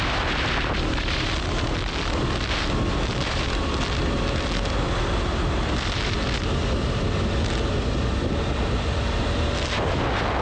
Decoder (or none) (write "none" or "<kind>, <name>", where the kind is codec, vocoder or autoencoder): none